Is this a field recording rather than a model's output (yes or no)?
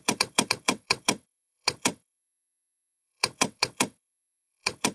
no